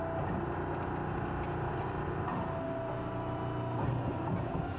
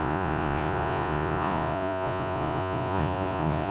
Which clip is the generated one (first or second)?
second